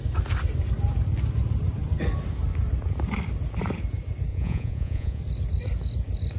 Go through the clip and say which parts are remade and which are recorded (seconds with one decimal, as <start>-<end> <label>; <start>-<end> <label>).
0.0-4.3 recorded; 4.3-5.2 remade; 5.2-6.4 recorded